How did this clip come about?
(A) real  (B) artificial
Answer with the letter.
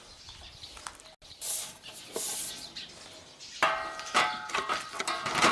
A